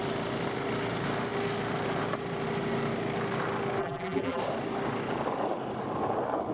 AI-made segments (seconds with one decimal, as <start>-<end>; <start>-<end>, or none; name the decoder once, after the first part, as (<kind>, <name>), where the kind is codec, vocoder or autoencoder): 3.8-4.4 (vocoder, BigVGAN v2)